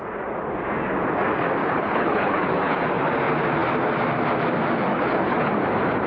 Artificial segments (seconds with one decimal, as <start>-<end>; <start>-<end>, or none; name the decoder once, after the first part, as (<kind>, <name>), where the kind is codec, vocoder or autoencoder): 1.6-2.8 (codec, HILCodec); 4.9-5.5